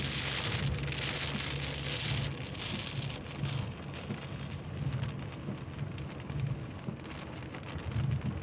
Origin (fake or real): real